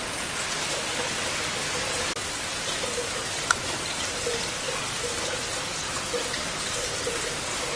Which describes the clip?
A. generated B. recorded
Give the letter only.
B